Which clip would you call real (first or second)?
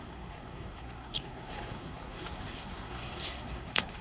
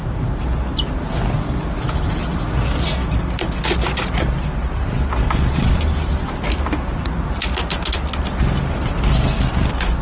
second